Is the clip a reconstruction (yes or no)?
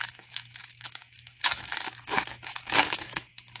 yes